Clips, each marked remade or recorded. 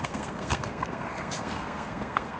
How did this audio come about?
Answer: remade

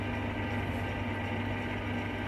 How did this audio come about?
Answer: recorded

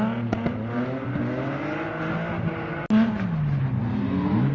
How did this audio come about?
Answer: recorded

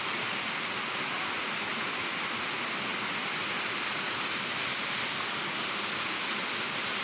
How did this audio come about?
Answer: recorded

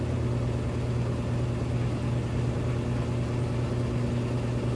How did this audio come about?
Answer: recorded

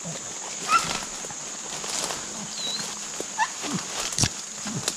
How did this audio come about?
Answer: recorded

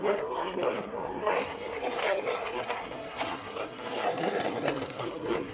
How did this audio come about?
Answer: remade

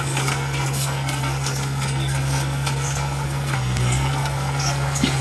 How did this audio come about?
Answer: remade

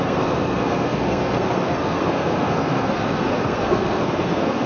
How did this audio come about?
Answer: remade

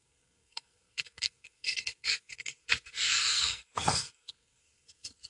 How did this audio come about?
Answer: remade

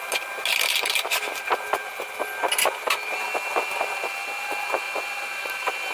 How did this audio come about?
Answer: recorded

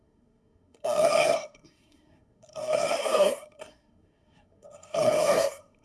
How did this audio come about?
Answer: remade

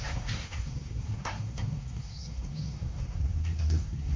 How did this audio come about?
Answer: remade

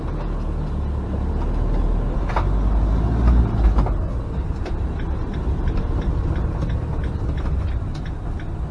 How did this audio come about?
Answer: recorded